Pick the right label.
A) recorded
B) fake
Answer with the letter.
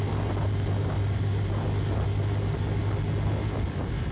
A